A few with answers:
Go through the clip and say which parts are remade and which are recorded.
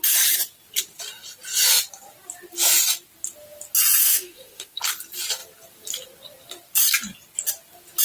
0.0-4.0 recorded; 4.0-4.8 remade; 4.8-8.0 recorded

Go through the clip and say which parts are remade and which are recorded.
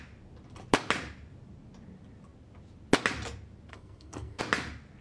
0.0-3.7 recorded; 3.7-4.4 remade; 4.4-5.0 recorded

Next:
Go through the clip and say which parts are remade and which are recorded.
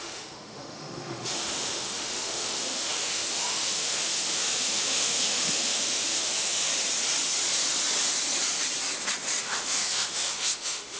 0.0-6.7 remade; 6.7-9.4 recorded; 9.4-11.0 remade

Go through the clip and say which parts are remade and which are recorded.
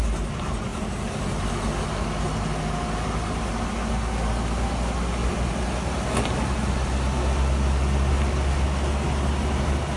0.0-10.0 recorded